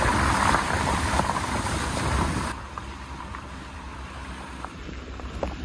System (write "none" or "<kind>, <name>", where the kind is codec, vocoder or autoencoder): vocoder, BigVGAN v2